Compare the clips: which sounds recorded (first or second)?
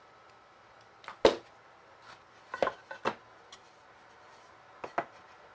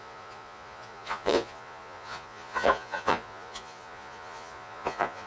first